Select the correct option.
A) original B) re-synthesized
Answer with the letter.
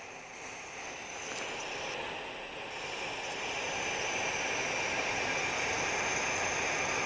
A